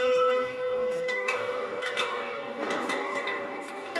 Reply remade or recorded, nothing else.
remade